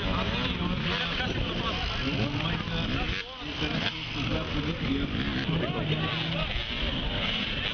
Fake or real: real